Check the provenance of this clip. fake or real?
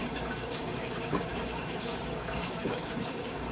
fake